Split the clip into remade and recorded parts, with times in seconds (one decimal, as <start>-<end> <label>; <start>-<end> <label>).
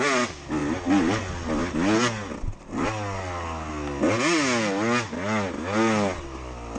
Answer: 0.0-6.8 recorded